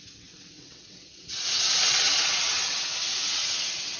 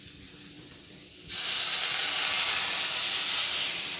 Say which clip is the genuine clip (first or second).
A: second